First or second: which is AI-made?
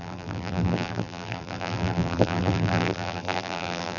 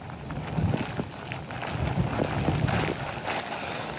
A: first